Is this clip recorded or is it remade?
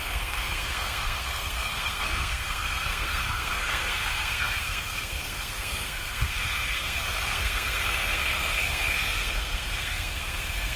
remade